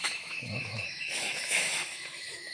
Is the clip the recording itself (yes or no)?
no